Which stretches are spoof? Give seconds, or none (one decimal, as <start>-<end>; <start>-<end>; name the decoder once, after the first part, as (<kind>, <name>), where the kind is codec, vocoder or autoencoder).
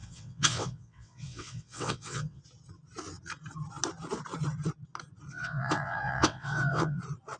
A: 0.0-2.4 (vocoder, WaveNeXt); 5.3-7.0